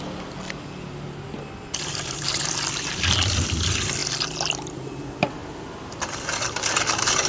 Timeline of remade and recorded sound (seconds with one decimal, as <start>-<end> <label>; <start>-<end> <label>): 0.0-7.3 recorded